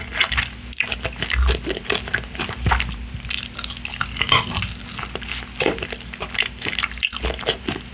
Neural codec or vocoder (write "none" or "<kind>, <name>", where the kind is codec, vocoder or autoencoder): none